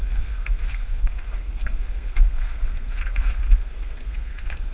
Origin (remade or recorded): remade